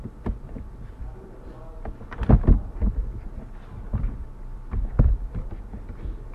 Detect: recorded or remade remade